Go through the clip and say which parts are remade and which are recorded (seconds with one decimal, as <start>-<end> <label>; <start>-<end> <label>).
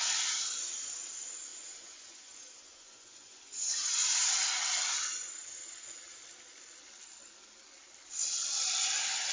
0.0-1.5 recorded; 1.5-4.3 remade; 4.3-9.3 recorded